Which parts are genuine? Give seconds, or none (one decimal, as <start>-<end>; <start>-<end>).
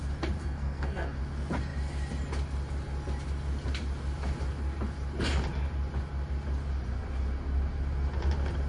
0.0-0.4; 1.2-8.7